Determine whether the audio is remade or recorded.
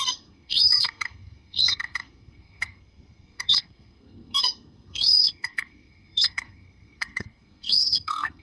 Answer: remade